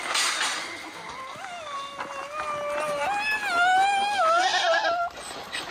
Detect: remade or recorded recorded